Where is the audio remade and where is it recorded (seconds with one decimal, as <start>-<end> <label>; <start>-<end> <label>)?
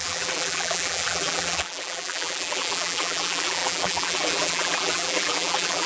0.0-5.9 remade